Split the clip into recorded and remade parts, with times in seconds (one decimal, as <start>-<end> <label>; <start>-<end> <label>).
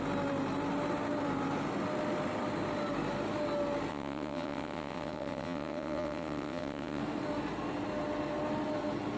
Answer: 0.0-3.9 recorded; 3.9-7.0 remade; 7.0-9.2 recorded